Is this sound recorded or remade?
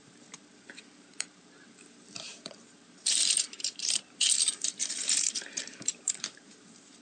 remade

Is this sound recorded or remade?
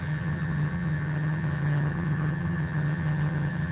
remade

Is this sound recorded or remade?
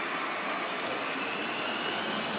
recorded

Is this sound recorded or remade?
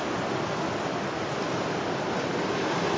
recorded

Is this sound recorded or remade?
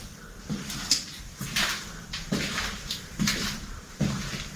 remade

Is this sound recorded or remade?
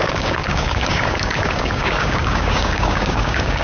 remade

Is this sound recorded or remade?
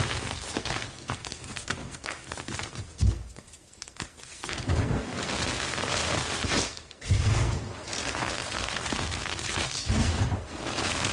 remade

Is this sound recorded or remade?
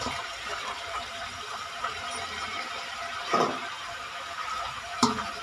remade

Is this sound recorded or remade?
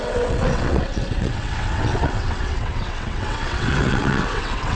remade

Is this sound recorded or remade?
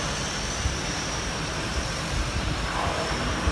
remade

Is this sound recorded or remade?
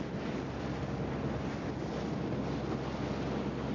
recorded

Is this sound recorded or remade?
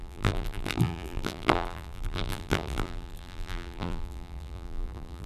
remade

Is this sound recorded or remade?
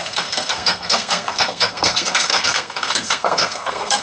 remade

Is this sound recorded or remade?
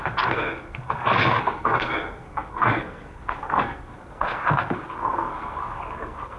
remade